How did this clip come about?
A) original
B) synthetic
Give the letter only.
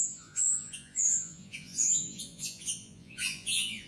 B